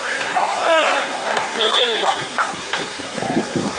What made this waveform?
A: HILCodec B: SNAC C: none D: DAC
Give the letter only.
B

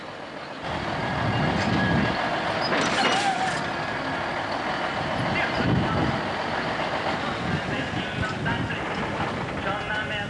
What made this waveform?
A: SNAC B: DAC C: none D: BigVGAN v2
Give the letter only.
C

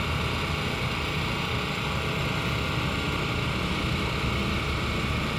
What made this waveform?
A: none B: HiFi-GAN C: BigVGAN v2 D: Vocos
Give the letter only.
A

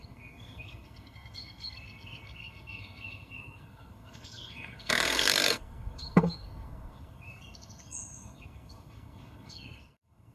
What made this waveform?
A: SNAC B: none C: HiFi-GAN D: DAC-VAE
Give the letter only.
A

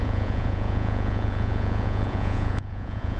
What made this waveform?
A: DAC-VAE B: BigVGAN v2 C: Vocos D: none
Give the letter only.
C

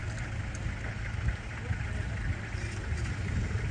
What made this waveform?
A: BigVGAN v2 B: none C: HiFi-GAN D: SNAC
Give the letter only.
B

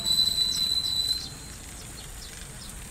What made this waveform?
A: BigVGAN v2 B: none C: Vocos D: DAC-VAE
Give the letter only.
B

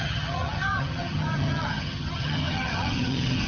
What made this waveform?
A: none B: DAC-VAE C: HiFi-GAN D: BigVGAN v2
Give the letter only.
C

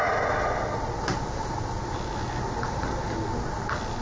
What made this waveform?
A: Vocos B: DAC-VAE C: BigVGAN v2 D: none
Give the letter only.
D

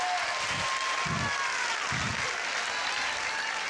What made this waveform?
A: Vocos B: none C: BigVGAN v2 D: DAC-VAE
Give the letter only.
B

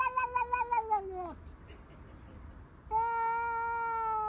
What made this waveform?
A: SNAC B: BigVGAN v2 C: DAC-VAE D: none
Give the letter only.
D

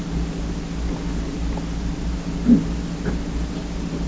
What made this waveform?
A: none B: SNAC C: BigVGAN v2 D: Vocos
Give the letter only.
A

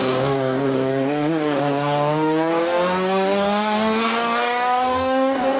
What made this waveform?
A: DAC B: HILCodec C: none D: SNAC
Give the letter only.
A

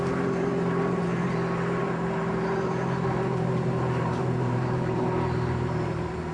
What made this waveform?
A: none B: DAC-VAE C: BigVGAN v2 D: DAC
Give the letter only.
C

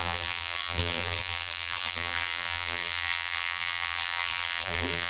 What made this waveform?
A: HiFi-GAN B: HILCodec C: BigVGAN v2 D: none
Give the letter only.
C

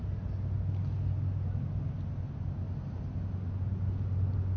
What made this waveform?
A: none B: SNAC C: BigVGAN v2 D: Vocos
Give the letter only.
A